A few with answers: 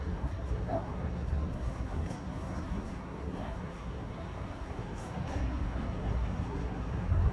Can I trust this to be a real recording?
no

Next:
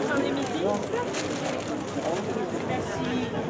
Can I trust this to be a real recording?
yes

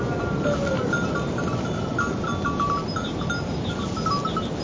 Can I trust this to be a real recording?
yes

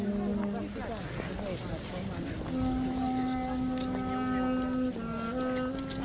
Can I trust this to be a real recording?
yes